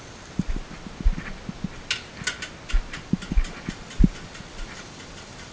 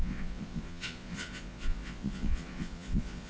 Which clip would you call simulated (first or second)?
second